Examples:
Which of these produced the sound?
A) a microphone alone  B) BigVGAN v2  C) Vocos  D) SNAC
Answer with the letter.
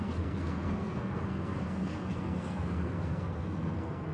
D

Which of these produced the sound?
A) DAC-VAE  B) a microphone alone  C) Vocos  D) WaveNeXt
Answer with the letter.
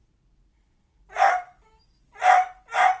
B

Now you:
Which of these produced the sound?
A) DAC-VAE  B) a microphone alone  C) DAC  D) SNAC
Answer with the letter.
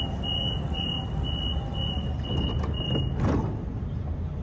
B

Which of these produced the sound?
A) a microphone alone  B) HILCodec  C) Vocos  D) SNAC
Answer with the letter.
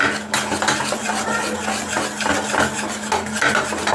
A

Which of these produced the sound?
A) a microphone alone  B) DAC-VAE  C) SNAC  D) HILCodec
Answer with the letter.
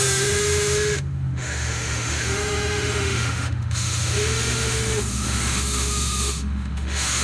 B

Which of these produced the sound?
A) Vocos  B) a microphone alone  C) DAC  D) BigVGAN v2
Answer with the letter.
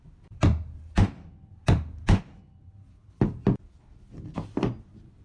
B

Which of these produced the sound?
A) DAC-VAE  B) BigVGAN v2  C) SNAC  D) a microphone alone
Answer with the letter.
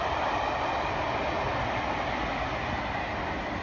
D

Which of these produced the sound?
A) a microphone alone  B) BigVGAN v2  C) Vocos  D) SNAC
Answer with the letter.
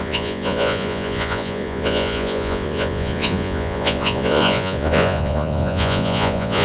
C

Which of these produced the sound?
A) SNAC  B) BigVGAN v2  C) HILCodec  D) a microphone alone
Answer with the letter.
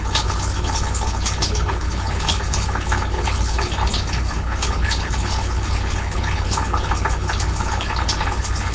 C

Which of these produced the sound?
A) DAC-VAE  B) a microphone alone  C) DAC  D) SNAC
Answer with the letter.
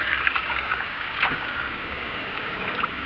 C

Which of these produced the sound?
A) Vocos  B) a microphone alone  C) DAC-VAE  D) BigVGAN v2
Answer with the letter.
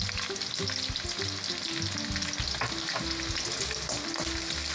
B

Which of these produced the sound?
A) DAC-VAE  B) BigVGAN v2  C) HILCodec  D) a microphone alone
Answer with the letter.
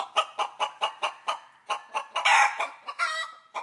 B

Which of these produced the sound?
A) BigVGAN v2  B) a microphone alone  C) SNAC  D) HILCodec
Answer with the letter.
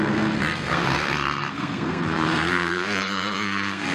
C